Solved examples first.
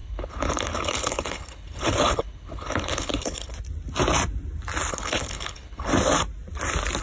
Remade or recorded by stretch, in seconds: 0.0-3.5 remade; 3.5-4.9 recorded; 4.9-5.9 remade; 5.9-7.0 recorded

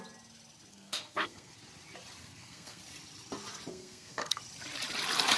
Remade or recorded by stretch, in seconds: 0.0-0.7 recorded; 0.7-1.5 remade; 1.5-2.2 recorded; 2.2-2.8 remade; 2.8-3.7 recorded; 3.7-4.4 remade; 4.4-5.4 recorded

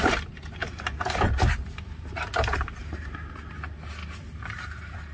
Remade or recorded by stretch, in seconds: 0.0-0.6 recorded; 0.6-2.3 remade; 2.3-2.8 recorded; 2.8-3.5 remade; 3.5-4.0 recorded; 4.0-5.1 remade

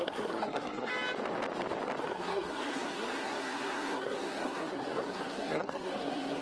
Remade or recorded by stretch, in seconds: 0.0-0.9 remade; 0.9-2.0 recorded; 2.0-6.4 remade

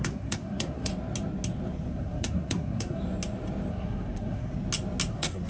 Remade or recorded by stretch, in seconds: 0.0-0.9 remade; 0.9-1.9 recorded; 1.9-3.0 remade; 3.0-3.7 recorded; 3.7-4.5 remade; 4.5-5.1 recorded; 5.1-5.5 remade

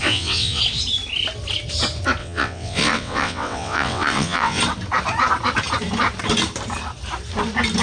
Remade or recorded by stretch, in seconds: 0.0-0.6 remade; 0.6-2.2 recorded; 2.2-4.6 remade; 4.6-7.8 recorded

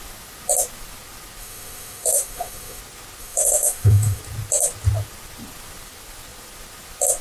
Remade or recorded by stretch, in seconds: 0.0-1.4 recorded; 1.4-2.8 remade; 2.8-3.2 recorded; 3.2-4.2 remade; 4.2-7.2 recorded

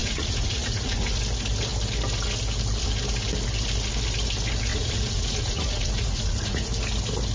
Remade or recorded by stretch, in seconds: 0.0-1.2 remade; 1.2-4.7 recorded; 4.7-6.6 remade; 6.6-7.3 recorded